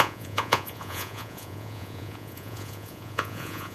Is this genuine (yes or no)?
no